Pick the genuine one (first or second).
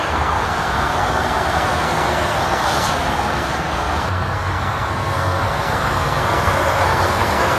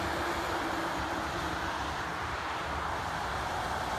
second